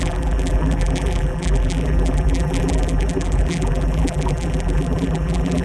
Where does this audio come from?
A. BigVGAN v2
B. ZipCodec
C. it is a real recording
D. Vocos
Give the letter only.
A